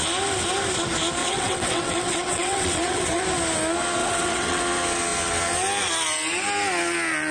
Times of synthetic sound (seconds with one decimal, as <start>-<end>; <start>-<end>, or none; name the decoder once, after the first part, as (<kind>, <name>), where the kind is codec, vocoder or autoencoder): 1.2-3.2 (vocoder, WaveNeXt); 4.0-4.6